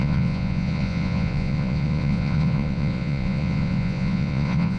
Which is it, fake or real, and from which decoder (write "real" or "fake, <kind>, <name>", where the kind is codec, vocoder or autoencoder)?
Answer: fake, vocoder, Vocos